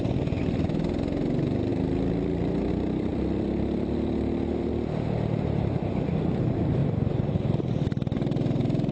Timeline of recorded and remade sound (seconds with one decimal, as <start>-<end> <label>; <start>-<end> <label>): 0.0-1.7 recorded; 1.7-2.7 remade; 2.7-3.1 recorded; 3.1-4.7 remade; 4.7-6.8 recorded; 6.8-7.3 remade; 7.3-8.9 recorded